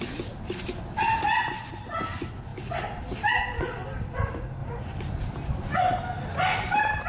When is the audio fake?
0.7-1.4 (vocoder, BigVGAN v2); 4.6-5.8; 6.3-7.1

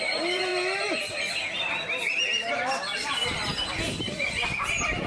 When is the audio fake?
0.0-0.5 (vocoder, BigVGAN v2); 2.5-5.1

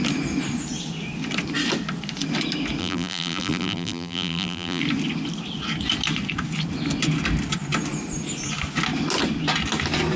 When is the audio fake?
2.8-4.8 (vocoder, BigVGAN v2)

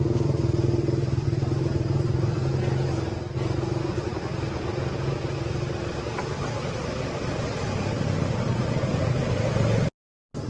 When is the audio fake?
none

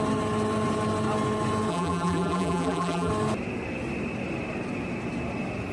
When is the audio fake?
1.7-3.1 (vocoder, BigVGAN v2)

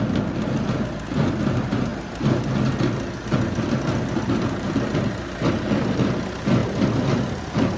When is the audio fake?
none

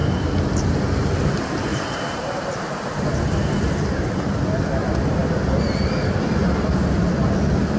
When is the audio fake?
1.7-3.2 (vocoder, BigVGAN v2)